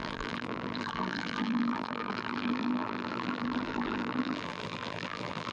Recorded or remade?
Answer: remade